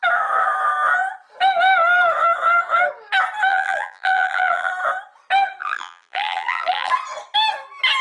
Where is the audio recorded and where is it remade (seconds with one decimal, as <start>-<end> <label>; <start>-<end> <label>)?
0.0-3.5 recorded; 3.5-4.7 remade; 4.7-5.6 recorded; 5.6-6.9 remade; 6.9-8.0 recorded